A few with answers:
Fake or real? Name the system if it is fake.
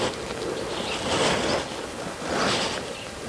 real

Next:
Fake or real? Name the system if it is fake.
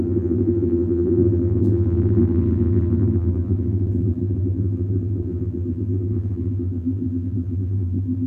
fake, vocoder, BigVGAN v2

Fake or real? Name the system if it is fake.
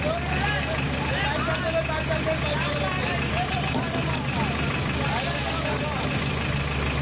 real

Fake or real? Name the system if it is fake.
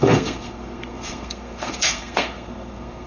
fake, codec, SNAC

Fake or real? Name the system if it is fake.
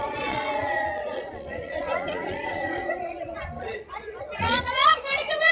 fake, vocoder, Vocos